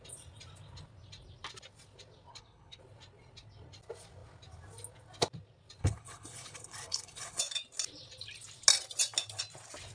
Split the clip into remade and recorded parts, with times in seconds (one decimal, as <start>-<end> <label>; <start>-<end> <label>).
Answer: 0.0-2.3 recorded; 2.3-2.8 remade; 2.8-5.8 recorded; 5.8-7.4 remade; 7.4-9.9 recorded